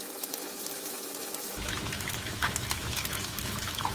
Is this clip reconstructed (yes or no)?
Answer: yes